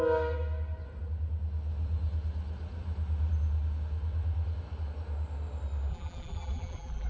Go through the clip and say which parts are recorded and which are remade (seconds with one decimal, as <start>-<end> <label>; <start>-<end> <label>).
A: 0.0-5.9 recorded; 5.9-7.1 remade